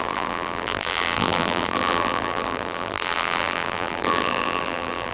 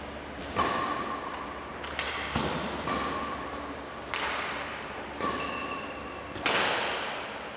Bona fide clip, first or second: second